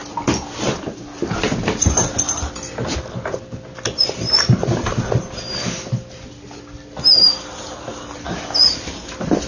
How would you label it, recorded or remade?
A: recorded